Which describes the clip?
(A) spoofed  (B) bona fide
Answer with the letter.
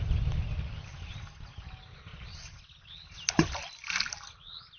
B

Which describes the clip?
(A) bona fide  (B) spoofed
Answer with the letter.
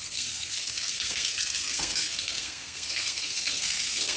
B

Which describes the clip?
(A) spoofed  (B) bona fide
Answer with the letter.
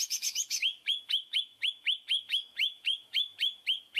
A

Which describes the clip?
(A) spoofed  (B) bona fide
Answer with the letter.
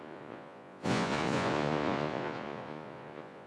A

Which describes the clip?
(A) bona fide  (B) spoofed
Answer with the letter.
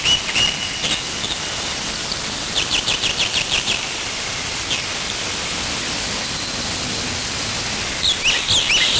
A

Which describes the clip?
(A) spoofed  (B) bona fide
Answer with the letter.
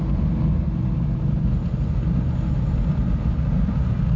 B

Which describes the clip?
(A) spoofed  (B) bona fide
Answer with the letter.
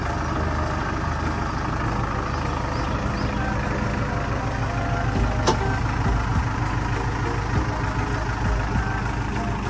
B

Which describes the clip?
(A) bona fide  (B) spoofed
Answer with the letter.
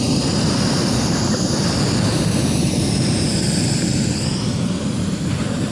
A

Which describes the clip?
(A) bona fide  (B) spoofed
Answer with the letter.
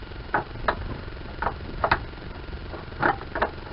A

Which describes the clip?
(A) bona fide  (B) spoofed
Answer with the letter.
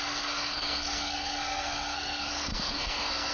B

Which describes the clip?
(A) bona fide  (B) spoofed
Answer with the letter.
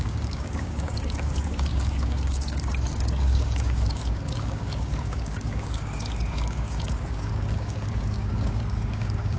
B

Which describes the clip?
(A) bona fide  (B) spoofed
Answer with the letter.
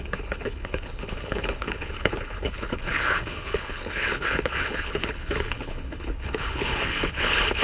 B